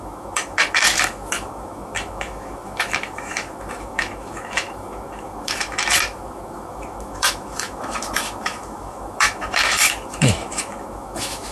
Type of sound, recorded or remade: remade